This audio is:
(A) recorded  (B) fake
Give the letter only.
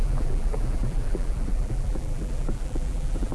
B